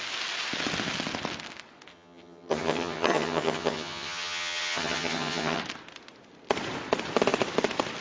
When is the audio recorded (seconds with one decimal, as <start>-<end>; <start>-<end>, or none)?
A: 0.0-1.9; 5.6-8.0